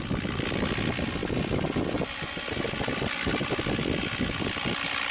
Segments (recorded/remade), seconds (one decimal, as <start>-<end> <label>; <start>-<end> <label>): 0.0-5.1 recorded